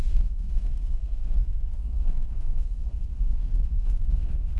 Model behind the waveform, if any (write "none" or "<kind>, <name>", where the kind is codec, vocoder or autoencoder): codec, SNAC